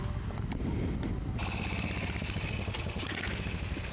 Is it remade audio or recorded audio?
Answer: recorded